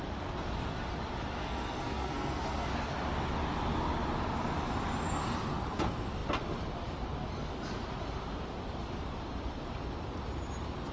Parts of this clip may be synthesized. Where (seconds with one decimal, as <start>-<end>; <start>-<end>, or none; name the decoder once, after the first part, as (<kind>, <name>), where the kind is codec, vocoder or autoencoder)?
1.4-2.7 (codec, SNAC)